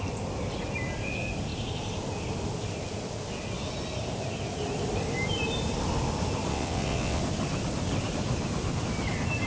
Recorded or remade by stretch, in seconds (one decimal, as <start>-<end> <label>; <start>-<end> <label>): 0.0-6.5 recorded; 6.5-7.2 remade; 7.2-9.5 recorded